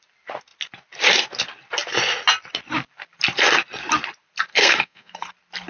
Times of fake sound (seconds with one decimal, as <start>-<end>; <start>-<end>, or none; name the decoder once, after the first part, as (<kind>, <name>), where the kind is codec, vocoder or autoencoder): 4.5-5.3 (codec, SNAC)